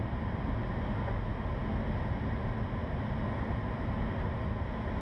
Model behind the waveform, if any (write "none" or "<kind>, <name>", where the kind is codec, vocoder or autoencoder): none